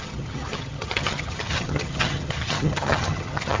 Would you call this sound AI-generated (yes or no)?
yes